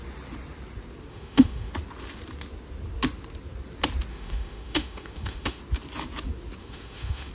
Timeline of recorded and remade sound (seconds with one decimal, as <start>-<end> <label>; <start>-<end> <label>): 0.0-1.1 recorded; 1.1-1.7 remade; 1.7-4.1 recorded; 4.1-5.6 remade; 5.6-6.6 recorded; 6.6-7.3 remade